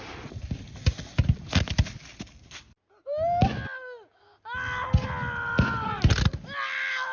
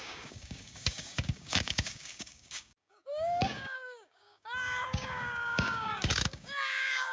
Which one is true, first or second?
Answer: first